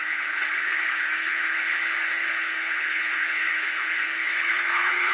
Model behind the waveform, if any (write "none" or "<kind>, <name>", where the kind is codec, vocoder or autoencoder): codec, HILCodec